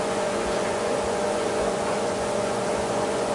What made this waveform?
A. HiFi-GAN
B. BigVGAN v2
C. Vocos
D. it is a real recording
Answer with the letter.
C